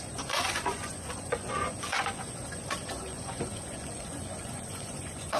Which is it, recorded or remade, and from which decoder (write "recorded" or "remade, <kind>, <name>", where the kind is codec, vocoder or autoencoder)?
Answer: remade, vocoder, Vocos